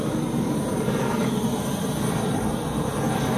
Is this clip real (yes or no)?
yes